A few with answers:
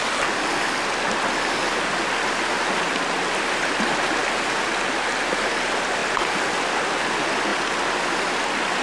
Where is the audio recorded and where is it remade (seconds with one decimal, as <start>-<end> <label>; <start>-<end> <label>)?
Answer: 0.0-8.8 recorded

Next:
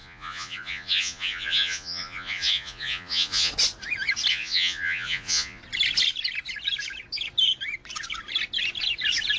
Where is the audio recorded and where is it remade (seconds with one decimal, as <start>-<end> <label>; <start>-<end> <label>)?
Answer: 0.0-3.5 remade; 3.5-4.3 recorded; 4.3-5.6 remade; 5.6-9.4 recorded

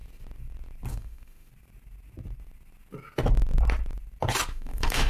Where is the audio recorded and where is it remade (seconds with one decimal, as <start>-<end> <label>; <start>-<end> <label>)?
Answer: 0.0-0.9 recorded; 0.9-1.5 remade; 1.5-4.5 recorded; 4.5-5.1 remade

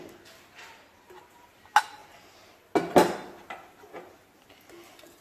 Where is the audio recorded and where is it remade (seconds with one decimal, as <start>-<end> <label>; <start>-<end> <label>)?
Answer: 0.0-5.2 recorded

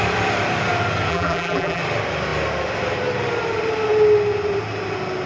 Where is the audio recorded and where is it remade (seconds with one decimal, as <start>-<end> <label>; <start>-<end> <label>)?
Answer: 0.0-1.1 recorded; 1.1-1.8 remade; 1.8-5.3 recorded

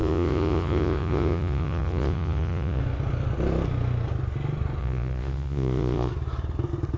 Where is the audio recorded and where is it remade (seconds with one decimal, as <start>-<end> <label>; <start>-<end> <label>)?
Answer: 0.0-2.8 remade; 2.8-4.8 recorded; 4.8-6.1 remade; 6.1-7.0 recorded

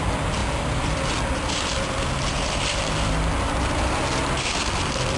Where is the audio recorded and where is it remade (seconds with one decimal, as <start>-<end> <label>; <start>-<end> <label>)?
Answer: 0.0-5.2 recorded

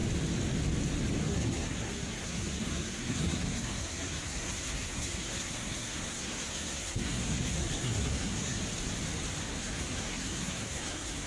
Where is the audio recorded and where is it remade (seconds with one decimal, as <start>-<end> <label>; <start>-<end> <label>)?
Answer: 0.0-1.2 recorded; 1.2-8.6 remade; 8.6-9.4 recorded; 9.4-11.3 remade